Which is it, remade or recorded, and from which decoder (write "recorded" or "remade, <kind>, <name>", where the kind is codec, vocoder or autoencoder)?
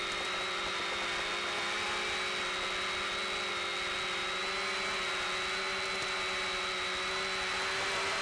recorded